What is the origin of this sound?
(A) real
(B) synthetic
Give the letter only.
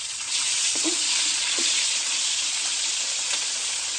B